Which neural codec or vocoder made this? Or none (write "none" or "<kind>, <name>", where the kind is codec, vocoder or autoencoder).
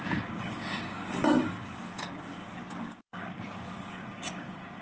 codec, DAC